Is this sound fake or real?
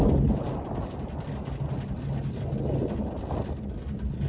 real